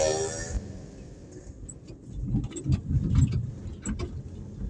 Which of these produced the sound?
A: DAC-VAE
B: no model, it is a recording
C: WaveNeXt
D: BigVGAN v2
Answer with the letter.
B